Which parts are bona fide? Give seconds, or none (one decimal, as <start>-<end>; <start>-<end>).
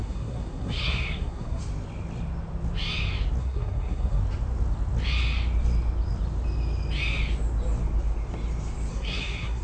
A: 1.6-3.4; 4.2-8.9